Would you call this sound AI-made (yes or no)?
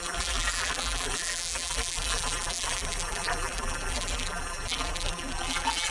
yes